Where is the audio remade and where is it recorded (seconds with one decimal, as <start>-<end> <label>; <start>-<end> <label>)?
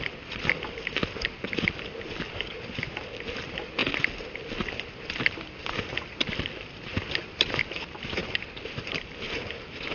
0.0-6.9 recorded; 6.9-7.6 remade; 7.6-9.9 recorded